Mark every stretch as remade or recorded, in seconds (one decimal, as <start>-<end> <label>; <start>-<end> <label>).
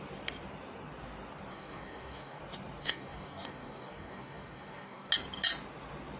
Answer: 0.0-1.5 recorded; 1.5-2.4 remade; 2.4-2.8 recorded; 2.8-5.1 remade; 5.1-6.2 recorded